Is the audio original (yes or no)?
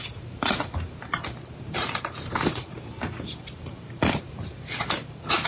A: no